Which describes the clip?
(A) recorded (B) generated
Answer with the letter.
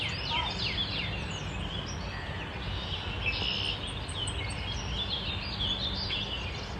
A